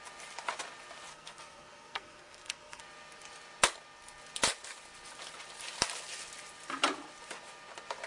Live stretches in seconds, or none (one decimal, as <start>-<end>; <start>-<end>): 0.0-1.1; 2.8-8.1